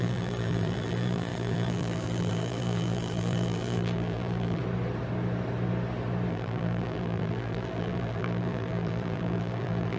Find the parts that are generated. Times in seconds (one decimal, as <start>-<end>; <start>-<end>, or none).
0.0-4.6; 6.3-10.0